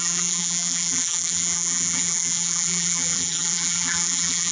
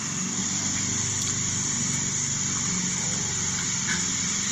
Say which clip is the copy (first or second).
first